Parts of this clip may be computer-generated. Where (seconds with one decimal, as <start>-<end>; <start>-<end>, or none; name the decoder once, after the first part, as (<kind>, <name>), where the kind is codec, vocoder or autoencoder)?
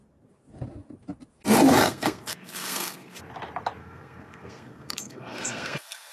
1.8-3.2 (codec, SNAC); 3.8-6.1